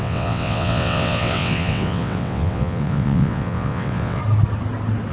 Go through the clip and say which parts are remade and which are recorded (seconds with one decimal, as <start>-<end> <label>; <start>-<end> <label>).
0.0-4.2 remade; 4.2-5.1 recorded

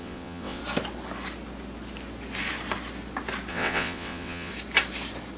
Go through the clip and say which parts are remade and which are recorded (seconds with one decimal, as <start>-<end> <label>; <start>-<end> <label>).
0.0-0.6 remade; 0.6-3.5 recorded; 3.5-4.5 remade; 4.5-5.4 recorded